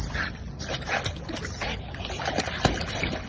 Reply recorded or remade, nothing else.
recorded